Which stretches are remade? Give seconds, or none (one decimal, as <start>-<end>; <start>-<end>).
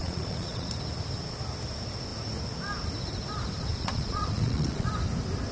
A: 0.0-0.7; 3.7-4.9